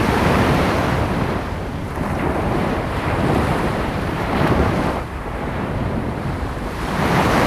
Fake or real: fake